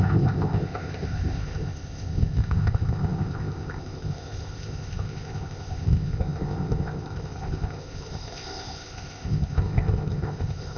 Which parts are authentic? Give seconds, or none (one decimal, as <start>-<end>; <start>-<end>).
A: none